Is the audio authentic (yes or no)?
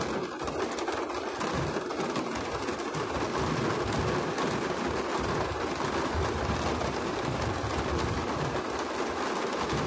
yes